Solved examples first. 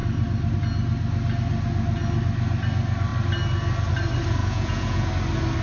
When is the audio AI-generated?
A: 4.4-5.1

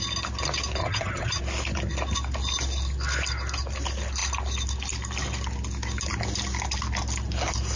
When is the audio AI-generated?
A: 0.8-1.4

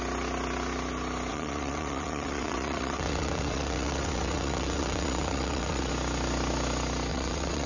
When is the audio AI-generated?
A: 1.3-5.9; 7.1-7.7

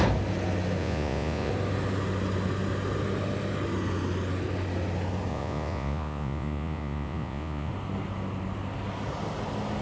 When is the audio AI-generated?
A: 0.8-1.5; 5.3-7.7

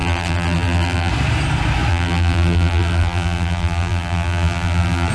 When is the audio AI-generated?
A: 0.0-1.1; 1.9-5.1

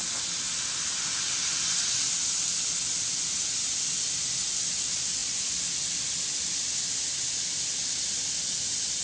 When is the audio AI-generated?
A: none

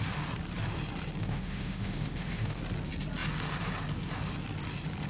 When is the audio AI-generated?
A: 1.2-2.6

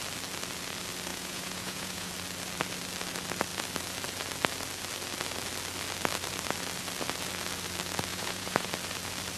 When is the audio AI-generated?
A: 1.1-2.1; 8.1-8.7